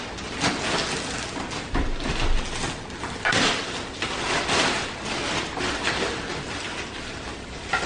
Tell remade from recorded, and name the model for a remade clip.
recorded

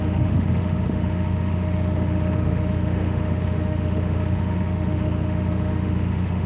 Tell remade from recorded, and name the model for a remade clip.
remade, autoencoder, DAC-VAE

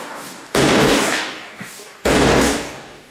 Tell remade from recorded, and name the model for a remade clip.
remade, codec, DAC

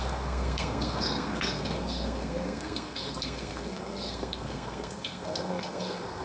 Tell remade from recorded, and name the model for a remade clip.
remade, codec, SNAC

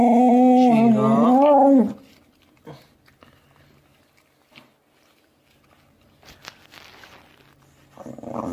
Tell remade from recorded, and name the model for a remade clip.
recorded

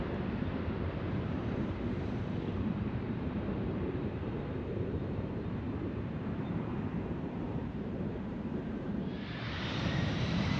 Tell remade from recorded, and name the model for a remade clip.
remade, vocoder, BigVGAN v2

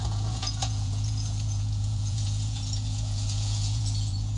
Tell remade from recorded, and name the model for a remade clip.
remade, vocoder, Vocos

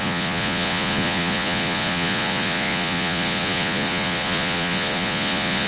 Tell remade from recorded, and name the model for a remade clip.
remade, vocoder, Vocos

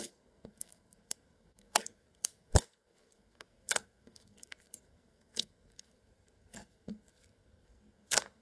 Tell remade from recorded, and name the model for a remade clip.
remade, codec, SNAC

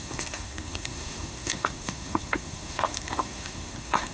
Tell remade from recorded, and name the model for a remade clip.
remade, codec, SNAC